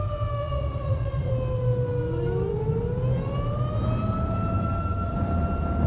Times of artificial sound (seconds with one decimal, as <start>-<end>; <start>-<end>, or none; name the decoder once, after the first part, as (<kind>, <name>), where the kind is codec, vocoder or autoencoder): 0.4-1.3 (vocoder, Vocos)